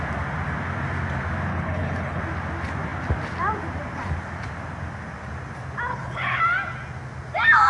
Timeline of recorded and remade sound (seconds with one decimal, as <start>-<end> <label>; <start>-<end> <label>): 0.0-1.5 recorded; 1.5-2.2 remade; 2.2-5.9 recorded; 5.9-6.4 remade; 6.4-7.7 recorded